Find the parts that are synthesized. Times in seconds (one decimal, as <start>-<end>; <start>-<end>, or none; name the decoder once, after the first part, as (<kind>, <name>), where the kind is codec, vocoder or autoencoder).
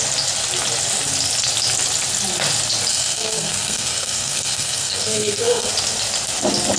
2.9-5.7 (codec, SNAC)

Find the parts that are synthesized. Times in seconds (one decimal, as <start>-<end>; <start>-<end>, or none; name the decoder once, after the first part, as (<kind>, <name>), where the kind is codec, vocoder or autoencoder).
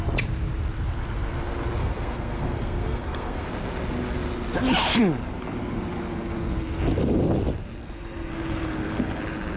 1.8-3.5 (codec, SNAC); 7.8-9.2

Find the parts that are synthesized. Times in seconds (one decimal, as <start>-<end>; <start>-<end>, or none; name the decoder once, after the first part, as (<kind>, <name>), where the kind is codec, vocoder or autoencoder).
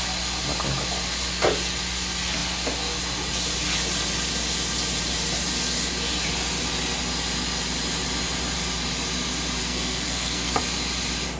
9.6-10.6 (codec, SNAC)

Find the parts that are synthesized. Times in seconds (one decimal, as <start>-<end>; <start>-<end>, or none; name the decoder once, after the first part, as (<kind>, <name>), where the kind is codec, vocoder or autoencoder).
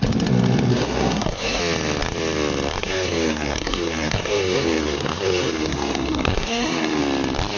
0.7-1.6 (codec, SNAC); 2.8-7.0